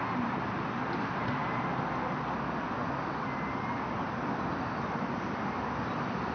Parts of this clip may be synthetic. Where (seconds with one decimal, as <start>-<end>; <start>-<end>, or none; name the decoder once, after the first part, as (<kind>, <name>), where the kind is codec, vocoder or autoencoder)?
none

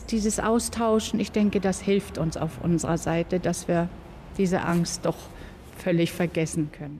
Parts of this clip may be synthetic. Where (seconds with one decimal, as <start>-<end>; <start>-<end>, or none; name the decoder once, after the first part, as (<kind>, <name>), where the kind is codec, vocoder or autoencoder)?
4.7-5.4 (vocoder, Vocos)

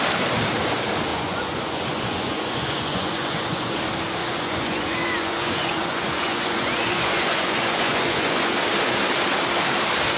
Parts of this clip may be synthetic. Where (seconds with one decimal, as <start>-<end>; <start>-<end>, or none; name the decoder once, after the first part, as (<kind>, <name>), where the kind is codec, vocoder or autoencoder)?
1.1-3.8 (vocoder, Vocos); 4.2-8.5

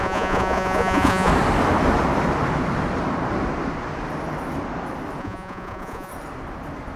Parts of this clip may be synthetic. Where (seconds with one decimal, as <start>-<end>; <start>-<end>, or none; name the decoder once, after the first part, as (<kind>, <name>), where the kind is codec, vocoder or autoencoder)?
0.0-1.3 (vocoder, Vocos); 5.2-6.1

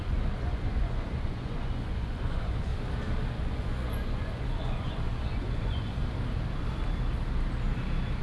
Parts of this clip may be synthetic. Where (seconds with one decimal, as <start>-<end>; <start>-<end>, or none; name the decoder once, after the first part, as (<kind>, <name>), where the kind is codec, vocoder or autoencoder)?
0.0-2.7 (vocoder, Vocos); 3.3-6.0

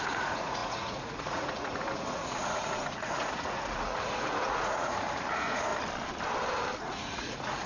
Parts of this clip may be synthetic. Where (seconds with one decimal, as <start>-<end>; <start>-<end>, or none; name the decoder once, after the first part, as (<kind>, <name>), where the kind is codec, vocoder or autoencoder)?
0.0-5.7 (vocoder, Vocos); 6.8-7.7

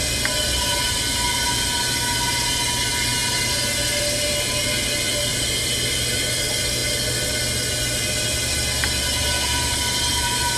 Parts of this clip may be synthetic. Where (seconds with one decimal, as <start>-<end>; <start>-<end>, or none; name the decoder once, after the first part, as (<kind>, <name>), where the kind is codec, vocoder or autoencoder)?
none

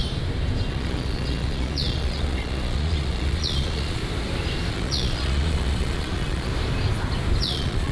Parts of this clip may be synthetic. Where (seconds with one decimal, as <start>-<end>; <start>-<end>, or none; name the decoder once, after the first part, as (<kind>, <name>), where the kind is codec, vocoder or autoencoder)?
0.7-4.0 (vocoder, Vocos); 4.7-6.5; 7.4-7.9